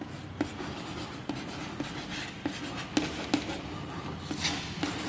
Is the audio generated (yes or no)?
no